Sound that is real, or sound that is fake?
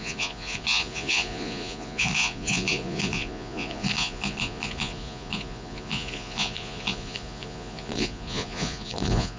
fake